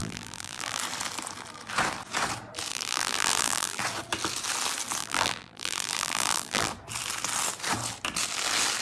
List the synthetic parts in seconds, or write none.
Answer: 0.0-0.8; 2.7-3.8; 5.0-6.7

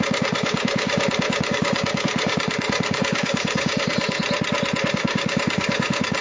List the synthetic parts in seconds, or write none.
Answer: 0.0-4.2; 4.9-6.2

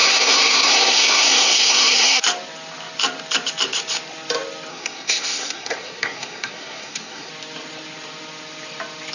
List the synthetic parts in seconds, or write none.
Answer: 0.0-2.2; 4.7-7.3

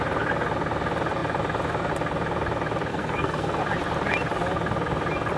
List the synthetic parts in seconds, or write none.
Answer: 2.9-3.6

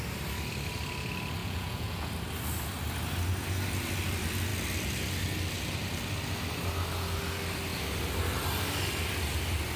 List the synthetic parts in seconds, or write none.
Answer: 1.4-2.1

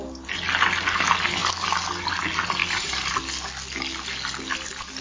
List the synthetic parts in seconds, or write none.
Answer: 2.6-3.2

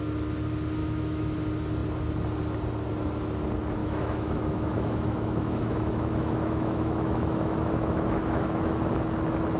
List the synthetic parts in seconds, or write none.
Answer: 0.8-1.3; 3.8-8.9

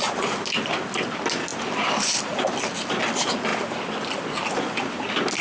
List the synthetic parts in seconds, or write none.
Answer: none